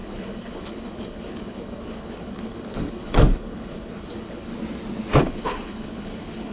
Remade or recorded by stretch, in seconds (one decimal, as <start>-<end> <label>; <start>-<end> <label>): 0.0-4.5 remade; 4.5-5.2 recorded; 5.2-6.5 remade